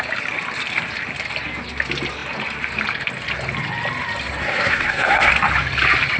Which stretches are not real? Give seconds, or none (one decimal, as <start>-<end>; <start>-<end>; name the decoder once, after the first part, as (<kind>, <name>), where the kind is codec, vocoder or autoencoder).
4.4-5.3 (codec, SNAC)